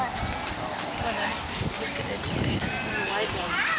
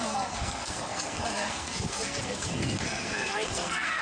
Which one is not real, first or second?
second